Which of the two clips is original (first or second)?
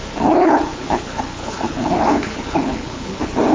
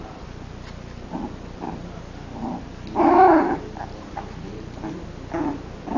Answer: second